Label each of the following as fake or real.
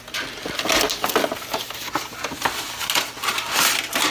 real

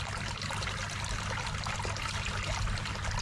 real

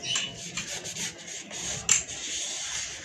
real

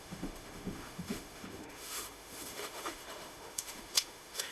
fake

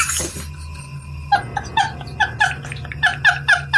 real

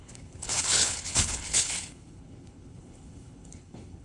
fake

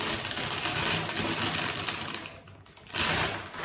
real